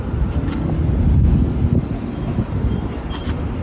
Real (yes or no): yes